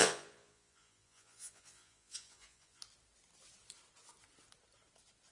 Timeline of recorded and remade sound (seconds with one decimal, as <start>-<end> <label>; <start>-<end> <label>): 0.0-2.8 remade; 2.8-5.3 recorded